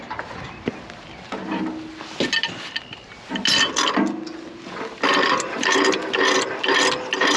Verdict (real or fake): real